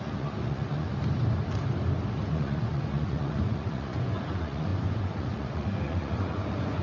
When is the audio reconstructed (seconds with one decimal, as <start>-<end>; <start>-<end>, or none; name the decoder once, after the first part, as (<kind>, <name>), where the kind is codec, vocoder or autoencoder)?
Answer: 0.0-0.9 (vocoder, Vocos); 2.1-6.8

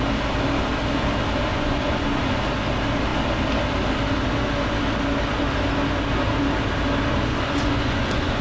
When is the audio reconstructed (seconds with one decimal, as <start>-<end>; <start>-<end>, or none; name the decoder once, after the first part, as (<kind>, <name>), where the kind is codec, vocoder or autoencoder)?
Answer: 1.5-2.4 (vocoder, Vocos); 7.3-8.4